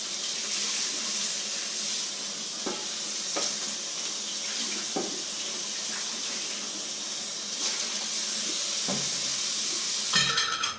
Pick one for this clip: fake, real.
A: real